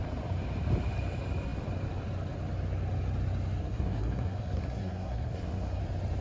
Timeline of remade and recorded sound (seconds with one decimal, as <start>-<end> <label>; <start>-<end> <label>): 0.0-3.6 recorded; 3.6-5.8 remade; 5.8-6.2 recorded